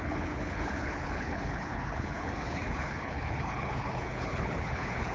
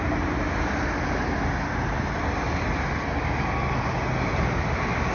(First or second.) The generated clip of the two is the first